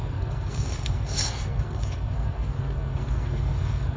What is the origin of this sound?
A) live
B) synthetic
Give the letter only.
B